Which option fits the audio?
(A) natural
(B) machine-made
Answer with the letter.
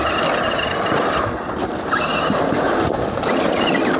A